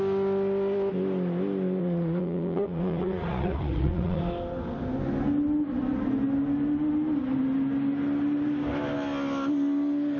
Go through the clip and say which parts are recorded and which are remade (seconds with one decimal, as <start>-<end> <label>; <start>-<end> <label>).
0.0-1.8 recorded; 1.8-4.2 remade; 4.2-10.2 recorded